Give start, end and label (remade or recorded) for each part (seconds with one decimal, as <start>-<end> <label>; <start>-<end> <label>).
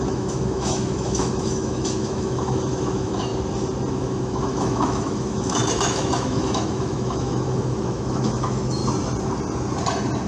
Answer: 0.0-3.3 remade; 3.3-4.0 recorded; 4.0-8.8 remade; 8.8-10.3 recorded